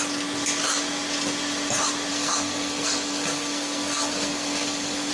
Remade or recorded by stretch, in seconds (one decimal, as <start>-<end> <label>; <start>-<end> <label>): 0.0-2.1 recorded; 2.1-5.1 remade